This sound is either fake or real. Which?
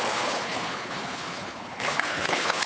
fake